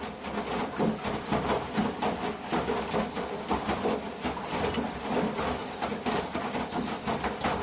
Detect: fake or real real